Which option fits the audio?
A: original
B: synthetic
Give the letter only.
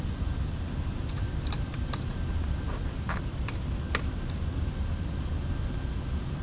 A